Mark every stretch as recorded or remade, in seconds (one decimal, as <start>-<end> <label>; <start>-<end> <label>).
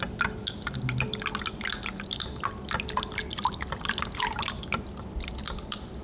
0.0-6.0 recorded